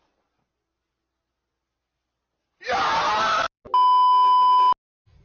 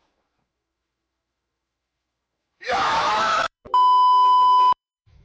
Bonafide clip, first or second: first